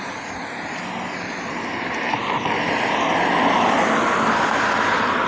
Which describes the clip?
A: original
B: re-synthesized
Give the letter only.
A